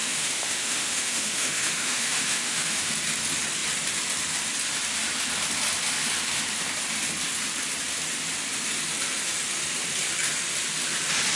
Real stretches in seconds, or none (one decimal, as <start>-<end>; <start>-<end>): 2.9-11.4